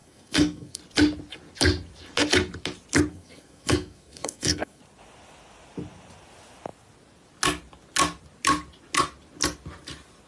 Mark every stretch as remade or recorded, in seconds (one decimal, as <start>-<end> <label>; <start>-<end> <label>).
0.0-0.8 remade; 0.8-3.1 recorded; 3.1-4.8 remade; 4.8-10.3 recorded